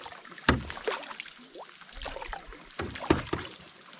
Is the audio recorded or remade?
recorded